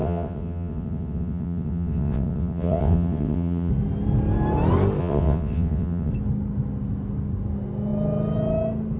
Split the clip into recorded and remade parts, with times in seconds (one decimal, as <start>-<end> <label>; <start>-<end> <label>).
0.0-3.7 remade; 3.7-5.0 recorded; 5.0-6.1 remade; 6.1-9.0 recorded